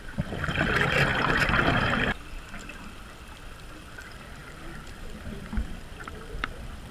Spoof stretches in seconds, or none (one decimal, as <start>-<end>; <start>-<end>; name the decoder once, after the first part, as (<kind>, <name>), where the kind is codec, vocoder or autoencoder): 0.0-1.1 (vocoder, BigVGAN v2); 1.7-6.9